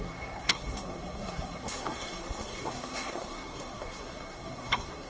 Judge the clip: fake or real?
fake